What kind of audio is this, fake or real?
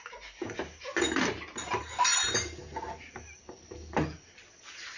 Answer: real